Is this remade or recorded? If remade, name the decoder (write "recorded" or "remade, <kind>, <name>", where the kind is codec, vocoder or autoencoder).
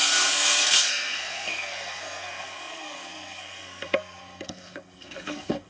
remade, codec, SNAC